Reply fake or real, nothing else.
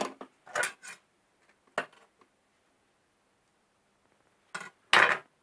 real